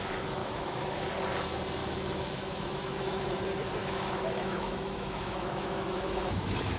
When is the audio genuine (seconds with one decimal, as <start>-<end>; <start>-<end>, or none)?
0.0-0.4; 1.1-1.8; 3.4-3.8